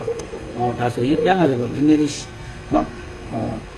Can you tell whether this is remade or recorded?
remade